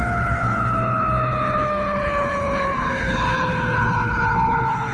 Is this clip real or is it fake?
fake